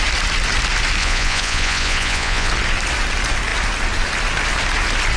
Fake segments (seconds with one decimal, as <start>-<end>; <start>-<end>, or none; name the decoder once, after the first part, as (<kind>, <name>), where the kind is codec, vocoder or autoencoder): 1.0-2.5 (vocoder, Vocos)